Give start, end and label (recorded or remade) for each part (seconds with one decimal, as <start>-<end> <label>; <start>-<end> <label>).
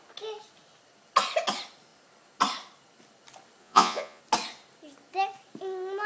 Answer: 0.0-3.6 recorded; 3.6-4.2 remade; 4.2-6.1 recorded